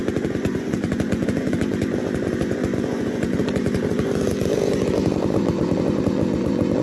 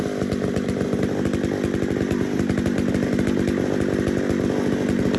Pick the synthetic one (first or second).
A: first